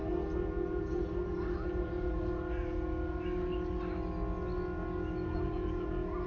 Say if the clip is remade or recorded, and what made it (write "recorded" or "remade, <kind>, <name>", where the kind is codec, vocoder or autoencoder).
recorded